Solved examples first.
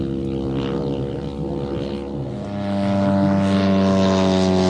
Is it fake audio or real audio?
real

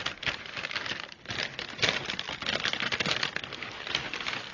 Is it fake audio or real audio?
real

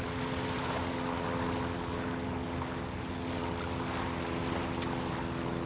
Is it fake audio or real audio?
real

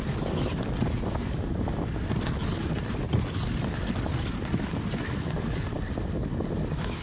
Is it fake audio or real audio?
real